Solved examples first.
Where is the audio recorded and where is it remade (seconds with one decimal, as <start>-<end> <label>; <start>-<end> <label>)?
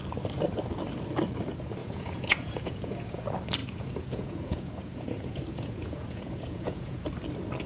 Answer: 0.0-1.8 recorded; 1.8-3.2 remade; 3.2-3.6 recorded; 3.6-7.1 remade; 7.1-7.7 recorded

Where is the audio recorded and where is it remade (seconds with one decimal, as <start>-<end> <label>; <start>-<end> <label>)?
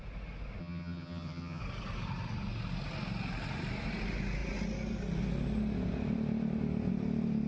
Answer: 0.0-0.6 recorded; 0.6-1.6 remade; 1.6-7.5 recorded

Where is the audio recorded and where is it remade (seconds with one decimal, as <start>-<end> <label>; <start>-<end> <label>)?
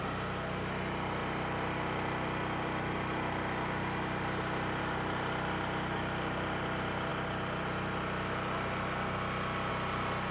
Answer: 0.0-10.3 recorded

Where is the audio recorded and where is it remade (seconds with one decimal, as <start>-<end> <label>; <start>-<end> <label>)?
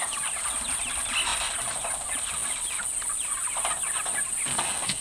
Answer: 0.0-4.5 recorded; 4.5-5.0 remade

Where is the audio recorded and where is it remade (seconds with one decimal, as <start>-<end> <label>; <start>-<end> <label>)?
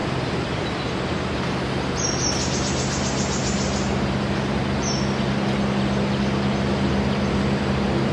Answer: 0.0-1.1 remade; 1.1-8.1 recorded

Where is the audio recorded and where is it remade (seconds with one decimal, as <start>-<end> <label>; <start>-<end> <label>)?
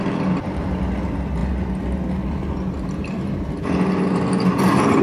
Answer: 0.0-5.0 recorded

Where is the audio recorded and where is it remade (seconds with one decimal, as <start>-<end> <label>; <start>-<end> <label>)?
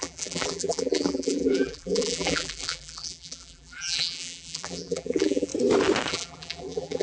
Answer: 0.0-5.5 remade; 5.5-6.1 recorded; 6.1-7.0 remade